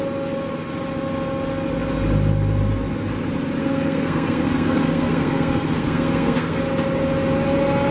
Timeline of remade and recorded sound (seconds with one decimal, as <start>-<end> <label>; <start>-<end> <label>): 0.0-3.6 recorded; 3.6-6.6 remade; 6.6-7.9 recorded